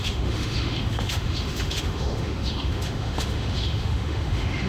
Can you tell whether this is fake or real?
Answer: fake